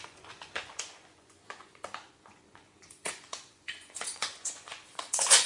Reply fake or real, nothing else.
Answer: fake